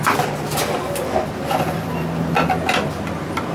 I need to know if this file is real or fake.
real